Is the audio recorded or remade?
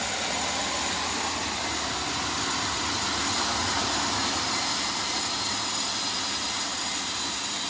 recorded